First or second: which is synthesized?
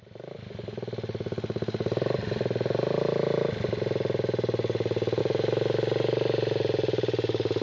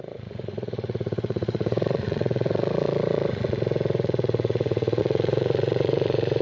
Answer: second